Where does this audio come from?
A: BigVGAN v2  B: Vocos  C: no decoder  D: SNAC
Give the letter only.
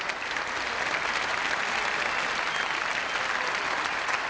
C